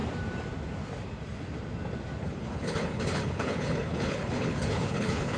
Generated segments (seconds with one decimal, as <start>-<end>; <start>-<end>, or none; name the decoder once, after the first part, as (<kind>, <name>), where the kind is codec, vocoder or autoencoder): 2.2-5.4 (codec, HILCodec)